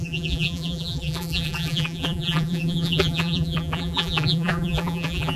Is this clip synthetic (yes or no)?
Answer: yes